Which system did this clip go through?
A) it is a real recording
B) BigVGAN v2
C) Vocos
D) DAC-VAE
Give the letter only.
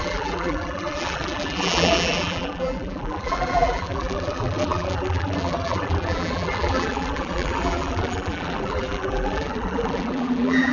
B